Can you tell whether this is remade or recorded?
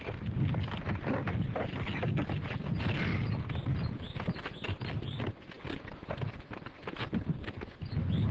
recorded